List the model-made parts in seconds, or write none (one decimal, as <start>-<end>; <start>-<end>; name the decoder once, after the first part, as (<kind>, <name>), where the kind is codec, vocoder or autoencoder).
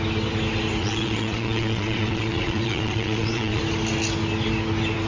0.8-3.6 (vocoder, Vocos)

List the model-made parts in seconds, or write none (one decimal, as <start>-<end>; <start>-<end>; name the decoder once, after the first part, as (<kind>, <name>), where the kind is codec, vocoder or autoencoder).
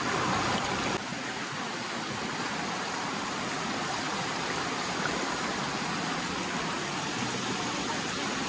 none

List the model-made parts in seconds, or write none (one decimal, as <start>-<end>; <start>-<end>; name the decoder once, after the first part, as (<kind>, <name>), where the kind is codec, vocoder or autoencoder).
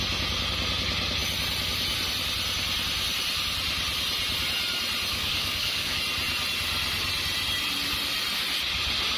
5.1-6.0 (codec, DAC)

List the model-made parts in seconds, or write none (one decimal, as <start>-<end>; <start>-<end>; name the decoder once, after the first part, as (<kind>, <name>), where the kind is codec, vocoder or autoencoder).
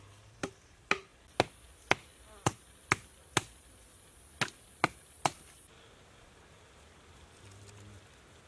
none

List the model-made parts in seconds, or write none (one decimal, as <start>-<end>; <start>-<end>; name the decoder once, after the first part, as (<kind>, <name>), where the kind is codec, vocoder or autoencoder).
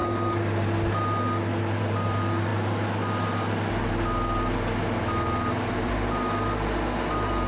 none